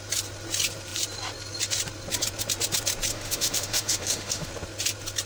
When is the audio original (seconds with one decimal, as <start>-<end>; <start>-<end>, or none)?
0.0-3.1; 4.5-5.3